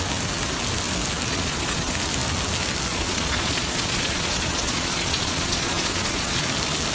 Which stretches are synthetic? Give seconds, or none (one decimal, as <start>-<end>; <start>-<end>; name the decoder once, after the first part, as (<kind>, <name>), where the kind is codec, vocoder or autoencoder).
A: 1.3-1.9 (vocoder, Vocos); 2.9-6.4